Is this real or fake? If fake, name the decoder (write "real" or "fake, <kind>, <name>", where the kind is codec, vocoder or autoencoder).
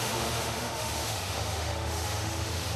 fake, autoencoder, DAC-VAE